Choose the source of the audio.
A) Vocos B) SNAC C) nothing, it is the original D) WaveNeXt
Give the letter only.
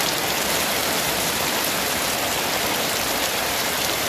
C